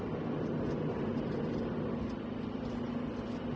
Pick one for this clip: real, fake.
real